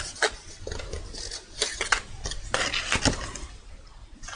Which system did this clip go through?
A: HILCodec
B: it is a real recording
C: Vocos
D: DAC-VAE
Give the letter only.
B